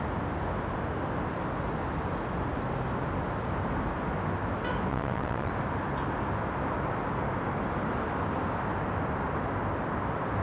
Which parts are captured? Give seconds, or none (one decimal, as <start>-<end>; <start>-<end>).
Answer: 0.0-4.9; 5.5-10.4